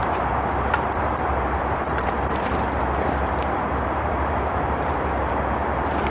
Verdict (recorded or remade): remade